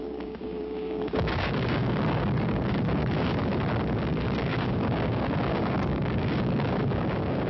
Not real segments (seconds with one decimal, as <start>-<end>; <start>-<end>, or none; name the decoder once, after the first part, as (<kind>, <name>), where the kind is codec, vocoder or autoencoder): 0.0-3.4 (codec, DAC); 4.1-7.5